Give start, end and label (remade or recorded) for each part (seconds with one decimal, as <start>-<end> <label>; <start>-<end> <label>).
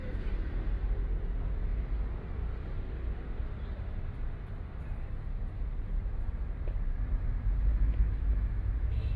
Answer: 0.0-7.7 recorded; 7.7-9.2 remade